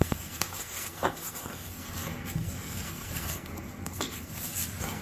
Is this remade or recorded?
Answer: remade